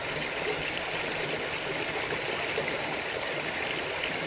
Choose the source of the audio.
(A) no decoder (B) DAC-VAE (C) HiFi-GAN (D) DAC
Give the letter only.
A